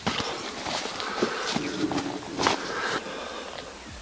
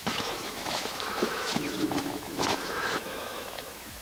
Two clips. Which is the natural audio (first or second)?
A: first